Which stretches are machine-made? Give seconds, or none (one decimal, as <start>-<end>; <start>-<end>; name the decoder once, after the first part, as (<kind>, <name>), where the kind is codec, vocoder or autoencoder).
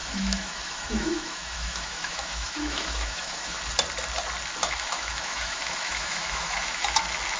0.0-3.6 (autoencoder, DAC-VAE); 4.6-7.0